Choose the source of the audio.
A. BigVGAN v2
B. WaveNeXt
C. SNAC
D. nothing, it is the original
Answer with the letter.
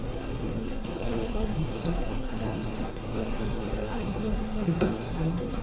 C